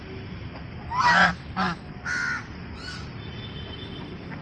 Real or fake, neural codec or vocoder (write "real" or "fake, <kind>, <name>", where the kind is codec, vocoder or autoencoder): real